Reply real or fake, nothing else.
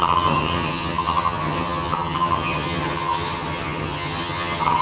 fake